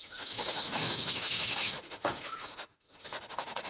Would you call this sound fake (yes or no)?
yes